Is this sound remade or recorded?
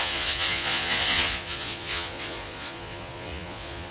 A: remade